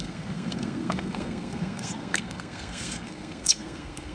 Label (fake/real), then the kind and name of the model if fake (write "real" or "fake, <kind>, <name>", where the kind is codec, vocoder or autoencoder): fake, codec, SNAC